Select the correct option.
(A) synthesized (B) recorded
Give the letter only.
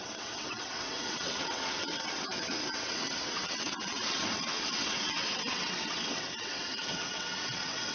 A